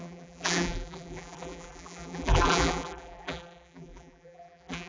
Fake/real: fake